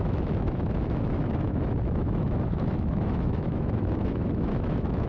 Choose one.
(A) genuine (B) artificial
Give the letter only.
B